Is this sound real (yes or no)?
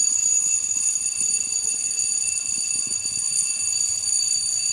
yes